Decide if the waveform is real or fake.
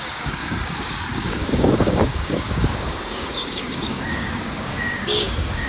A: fake